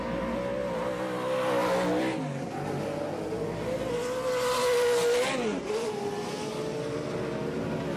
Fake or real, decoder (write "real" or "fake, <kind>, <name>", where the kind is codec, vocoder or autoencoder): real